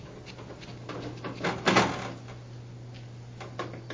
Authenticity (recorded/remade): recorded